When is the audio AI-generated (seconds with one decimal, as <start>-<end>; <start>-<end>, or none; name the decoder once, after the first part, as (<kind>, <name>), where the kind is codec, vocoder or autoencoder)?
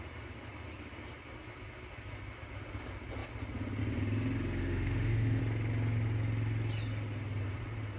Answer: 4.6-5.4 (autoencoder, DAC-VAE)